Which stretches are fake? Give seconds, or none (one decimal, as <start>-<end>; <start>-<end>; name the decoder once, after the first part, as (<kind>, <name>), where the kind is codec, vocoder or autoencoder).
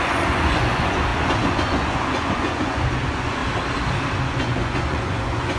0.0-3.4 (vocoder, Vocos); 4.2-5.6